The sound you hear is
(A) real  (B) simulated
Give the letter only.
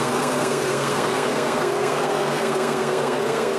B